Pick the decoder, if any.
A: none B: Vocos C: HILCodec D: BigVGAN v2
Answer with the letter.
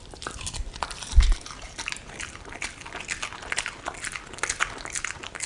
A